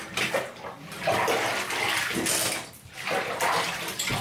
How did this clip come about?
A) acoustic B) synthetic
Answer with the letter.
A